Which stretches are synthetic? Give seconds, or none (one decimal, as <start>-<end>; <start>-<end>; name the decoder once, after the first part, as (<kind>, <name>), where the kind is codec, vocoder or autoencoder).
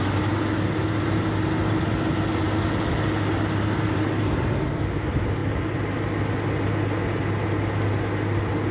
none